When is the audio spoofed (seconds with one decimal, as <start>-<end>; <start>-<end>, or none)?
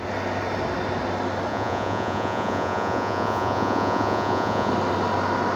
1.5-4.7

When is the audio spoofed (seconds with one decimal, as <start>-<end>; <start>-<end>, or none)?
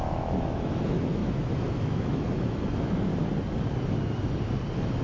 0.0-3.1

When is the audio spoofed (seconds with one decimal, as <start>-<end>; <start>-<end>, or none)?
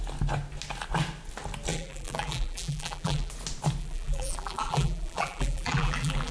1.7-3.3; 3.8-6.3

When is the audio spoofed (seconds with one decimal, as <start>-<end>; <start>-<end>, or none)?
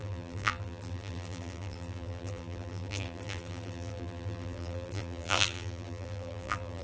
0.0-6.8